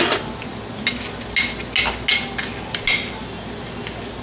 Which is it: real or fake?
real